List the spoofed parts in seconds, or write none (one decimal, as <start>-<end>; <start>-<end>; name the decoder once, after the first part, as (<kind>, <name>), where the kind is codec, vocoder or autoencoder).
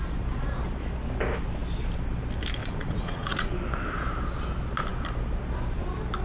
2.6-3.5 (vocoder, Vocos)